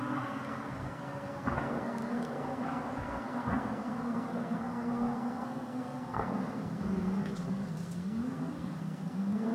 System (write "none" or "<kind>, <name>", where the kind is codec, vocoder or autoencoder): codec, SNAC